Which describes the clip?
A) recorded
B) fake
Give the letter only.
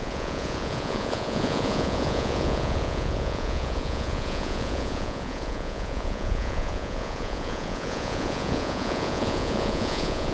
B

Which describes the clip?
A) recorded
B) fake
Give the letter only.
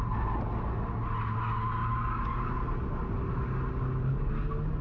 A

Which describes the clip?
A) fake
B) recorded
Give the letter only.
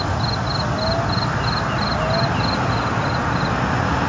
B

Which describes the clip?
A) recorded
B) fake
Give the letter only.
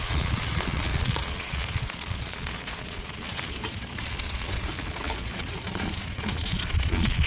B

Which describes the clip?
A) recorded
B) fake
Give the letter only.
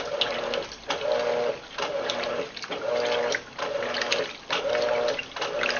A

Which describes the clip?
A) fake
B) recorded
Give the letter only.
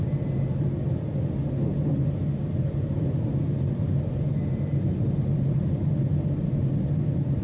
B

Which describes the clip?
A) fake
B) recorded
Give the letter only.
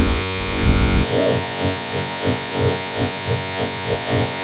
A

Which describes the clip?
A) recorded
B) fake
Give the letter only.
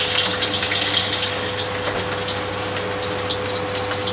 A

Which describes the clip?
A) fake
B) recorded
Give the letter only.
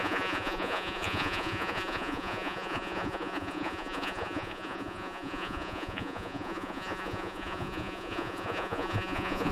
A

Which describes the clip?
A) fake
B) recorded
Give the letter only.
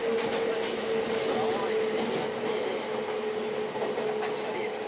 B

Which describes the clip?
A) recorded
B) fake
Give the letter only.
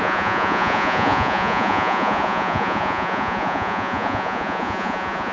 B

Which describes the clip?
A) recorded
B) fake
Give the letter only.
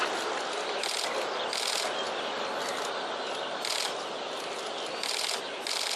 A